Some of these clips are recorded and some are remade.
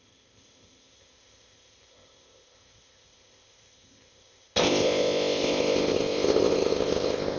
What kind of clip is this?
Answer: remade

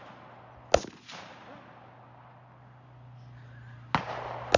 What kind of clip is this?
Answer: recorded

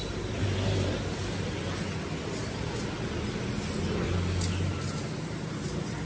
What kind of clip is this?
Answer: recorded